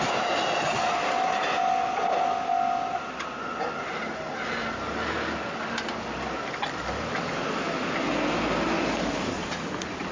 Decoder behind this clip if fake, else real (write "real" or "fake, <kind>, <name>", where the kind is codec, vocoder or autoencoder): real